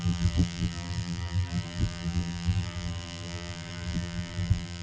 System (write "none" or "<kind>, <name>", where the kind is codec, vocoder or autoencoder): vocoder, BigVGAN v2